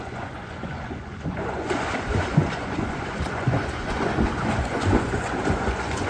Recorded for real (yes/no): no